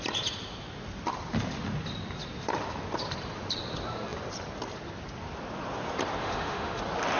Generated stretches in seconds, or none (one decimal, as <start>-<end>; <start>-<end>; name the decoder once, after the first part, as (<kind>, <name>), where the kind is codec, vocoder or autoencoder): 6.2-6.8 (autoencoder, DAC-VAE)